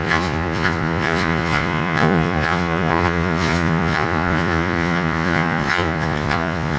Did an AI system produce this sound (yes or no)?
yes